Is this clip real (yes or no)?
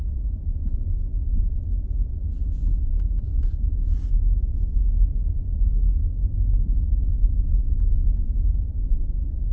yes